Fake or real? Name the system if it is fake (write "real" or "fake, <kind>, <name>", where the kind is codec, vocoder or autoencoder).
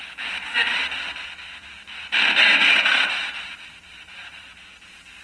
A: fake, vocoder, BigVGAN v2